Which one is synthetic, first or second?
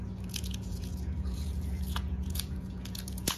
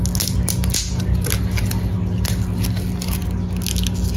first